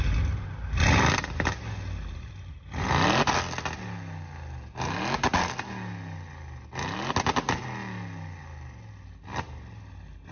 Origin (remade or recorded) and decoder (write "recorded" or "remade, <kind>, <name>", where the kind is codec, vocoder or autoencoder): recorded